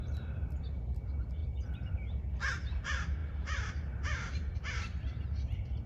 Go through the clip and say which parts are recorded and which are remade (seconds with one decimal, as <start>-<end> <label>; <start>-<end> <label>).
0.0-0.6 remade; 0.6-3.2 recorded; 3.2-4.7 remade; 4.7-5.9 recorded